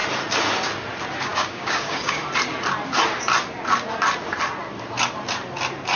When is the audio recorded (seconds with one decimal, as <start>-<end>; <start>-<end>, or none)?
0.0-1.2; 2.2-6.0